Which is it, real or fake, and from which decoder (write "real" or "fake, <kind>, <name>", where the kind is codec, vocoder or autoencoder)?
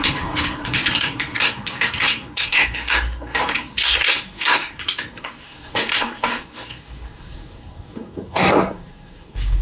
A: fake, codec, SNAC